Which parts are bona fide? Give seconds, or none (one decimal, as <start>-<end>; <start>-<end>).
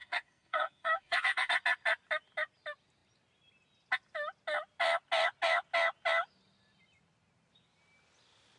1.5-8.6